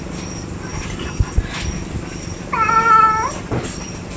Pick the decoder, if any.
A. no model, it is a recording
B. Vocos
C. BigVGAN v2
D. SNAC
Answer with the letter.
A